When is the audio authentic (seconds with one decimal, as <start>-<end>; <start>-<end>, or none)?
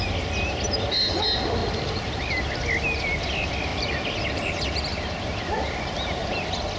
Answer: 0.0-6.8